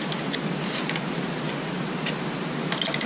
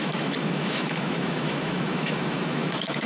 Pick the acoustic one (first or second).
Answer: first